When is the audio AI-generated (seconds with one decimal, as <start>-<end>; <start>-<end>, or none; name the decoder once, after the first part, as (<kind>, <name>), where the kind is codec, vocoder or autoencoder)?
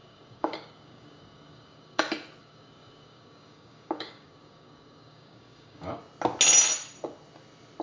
0.0-2.0 (codec, DAC); 2.4-6.0